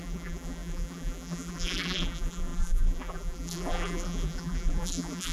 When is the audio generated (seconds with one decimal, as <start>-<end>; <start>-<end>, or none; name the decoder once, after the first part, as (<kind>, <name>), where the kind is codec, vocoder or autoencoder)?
0.0-5.3 (vocoder, BigVGAN v2)